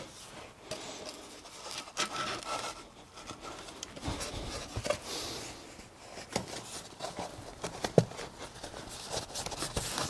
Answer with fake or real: real